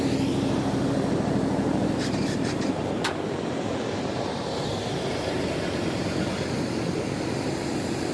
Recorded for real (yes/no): no